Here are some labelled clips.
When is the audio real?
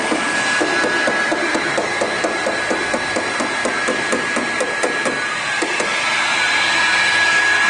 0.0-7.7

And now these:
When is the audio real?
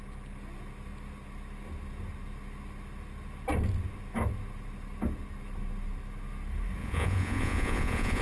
0.0-6.8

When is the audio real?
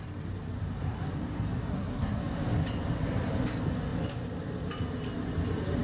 0.0-1.7; 2.2-5.8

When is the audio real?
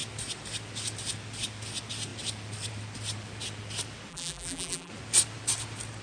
0.0-4.1; 4.9-6.0